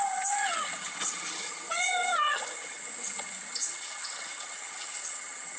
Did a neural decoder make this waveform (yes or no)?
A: yes